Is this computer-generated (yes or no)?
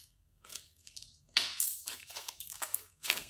yes